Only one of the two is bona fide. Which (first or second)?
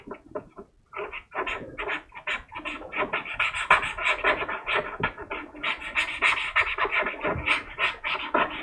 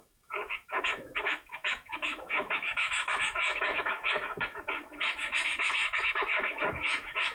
first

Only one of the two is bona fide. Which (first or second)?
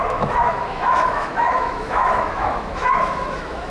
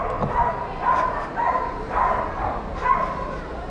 second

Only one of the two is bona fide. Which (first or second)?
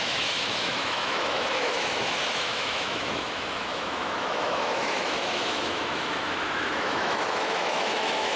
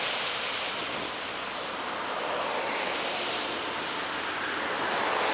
second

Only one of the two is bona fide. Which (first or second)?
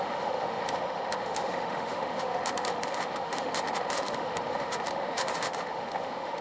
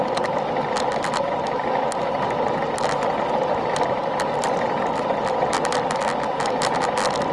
second